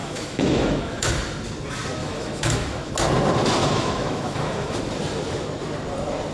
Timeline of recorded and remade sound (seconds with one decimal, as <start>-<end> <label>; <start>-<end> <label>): 0.0-1.1 remade; 1.1-2.0 recorded; 2.0-2.9 remade; 2.9-3.6 recorded; 3.6-4.8 remade; 4.8-6.3 recorded

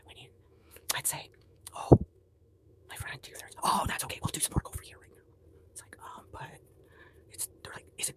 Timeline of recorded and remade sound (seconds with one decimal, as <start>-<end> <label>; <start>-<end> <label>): 0.0-3.1 remade; 3.1-4.0 recorded; 4.0-4.8 remade; 4.8-8.2 recorded

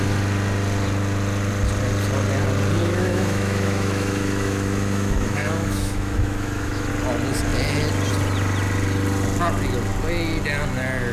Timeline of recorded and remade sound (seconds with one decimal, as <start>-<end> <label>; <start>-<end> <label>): 0.0-2.8 recorded; 2.8-6.9 remade; 6.9-11.1 recorded